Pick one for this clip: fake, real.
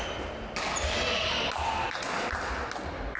real